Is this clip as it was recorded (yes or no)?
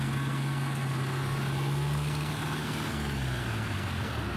no